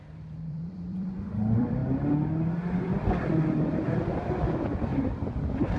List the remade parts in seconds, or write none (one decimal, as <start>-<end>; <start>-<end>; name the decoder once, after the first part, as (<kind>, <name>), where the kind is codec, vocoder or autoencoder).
0.0-1.8 (vocoder, BigVGAN v2); 2.8-4.9